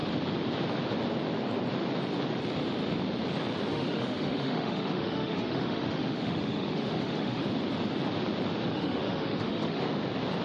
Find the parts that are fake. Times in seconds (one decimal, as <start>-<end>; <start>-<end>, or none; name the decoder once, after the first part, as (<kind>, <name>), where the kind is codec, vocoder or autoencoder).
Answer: 3.7-7.4 (autoencoder, DAC-VAE); 8.7-9.8